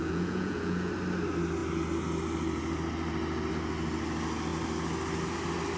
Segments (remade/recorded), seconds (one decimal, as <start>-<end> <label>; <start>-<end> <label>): 0.0-0.9 remade; 0.9-5.8 recorded